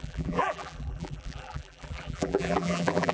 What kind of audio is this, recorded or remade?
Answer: remade